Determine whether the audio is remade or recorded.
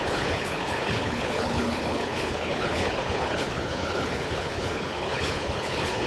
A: remade